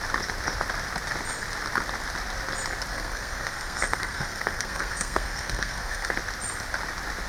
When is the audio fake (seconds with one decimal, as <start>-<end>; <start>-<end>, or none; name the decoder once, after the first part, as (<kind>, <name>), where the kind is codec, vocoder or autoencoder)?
2.9-6.1 (codec, SNAC)